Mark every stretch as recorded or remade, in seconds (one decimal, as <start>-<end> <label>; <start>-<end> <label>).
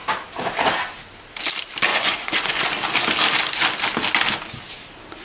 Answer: 0.0-1.9 recorded; 1.9-2.6 remade; 2.6-5.2 recorded